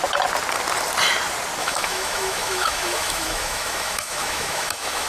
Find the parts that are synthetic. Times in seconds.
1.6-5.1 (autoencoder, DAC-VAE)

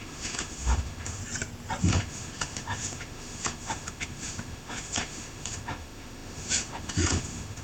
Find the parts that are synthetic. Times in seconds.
0.0-1.2 (autoencoder, DAC-VAE); 1.8-7.6

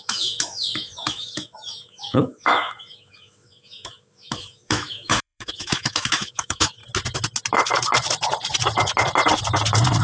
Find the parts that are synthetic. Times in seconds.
0.0-6.8 (autoencoder, DAC-VAE)

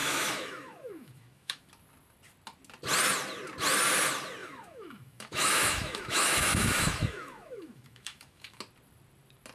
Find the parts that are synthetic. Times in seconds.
0.0-1.7 (autoencoder, DAC-VAE); 4.4-8.6